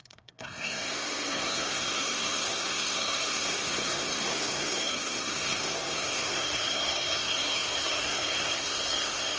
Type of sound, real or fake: fake